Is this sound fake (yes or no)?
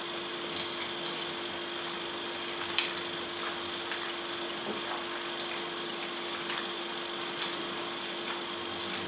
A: no